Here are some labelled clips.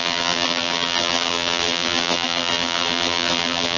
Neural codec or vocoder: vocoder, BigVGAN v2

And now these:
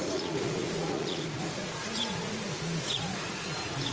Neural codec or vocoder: vocoder, Vocos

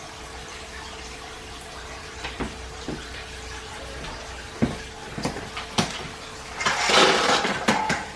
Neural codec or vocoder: none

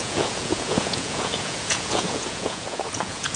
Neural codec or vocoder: vocoder, Vocos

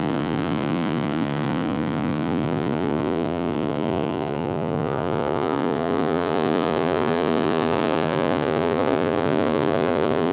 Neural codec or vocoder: vocoder, Vocos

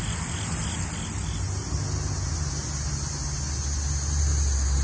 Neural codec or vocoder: none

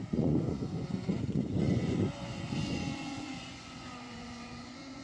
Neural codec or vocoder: vocoder, Vocos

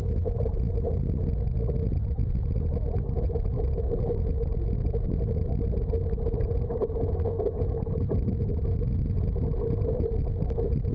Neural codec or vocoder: none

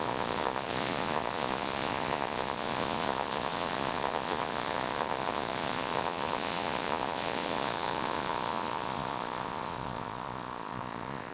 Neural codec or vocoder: vocoder, Vocos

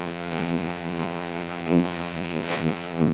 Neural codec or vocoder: vocoder, Vocos